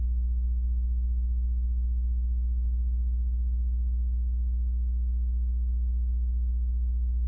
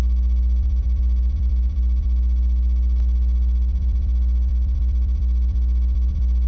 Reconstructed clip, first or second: second